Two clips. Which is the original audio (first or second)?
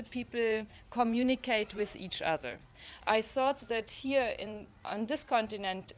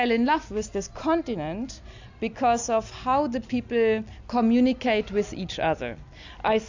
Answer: second